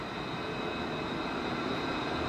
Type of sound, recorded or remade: recorded